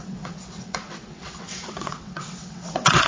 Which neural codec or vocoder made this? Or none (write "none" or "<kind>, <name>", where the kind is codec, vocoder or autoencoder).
vocoder, WaveNeXt